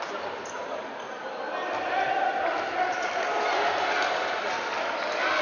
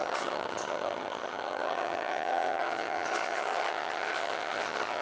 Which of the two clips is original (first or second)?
first